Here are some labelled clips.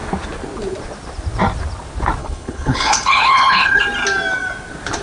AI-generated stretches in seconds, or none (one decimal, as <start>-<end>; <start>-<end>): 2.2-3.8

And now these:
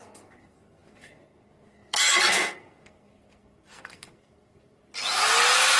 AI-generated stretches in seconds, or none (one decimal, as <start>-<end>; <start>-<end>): 0.0-4.8

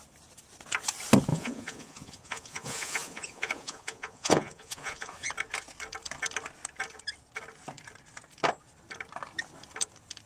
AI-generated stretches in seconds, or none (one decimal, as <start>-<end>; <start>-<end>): 1.3-5.3

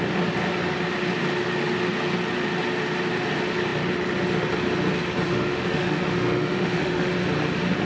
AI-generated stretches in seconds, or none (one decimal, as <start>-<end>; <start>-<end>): 5.3-7.1

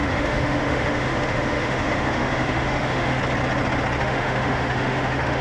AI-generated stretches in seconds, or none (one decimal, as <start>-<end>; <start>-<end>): 0.0-3.2; 4.0-5.4

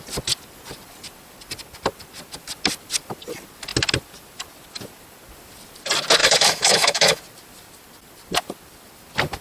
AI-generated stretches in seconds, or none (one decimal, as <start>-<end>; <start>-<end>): 6.2-7.2